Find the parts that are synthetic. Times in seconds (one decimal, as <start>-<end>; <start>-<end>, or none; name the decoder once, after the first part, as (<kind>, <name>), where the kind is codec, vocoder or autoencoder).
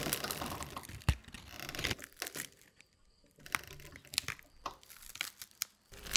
0.0-1.2 (vocoder, BigVGAN v2); 4.4-6.2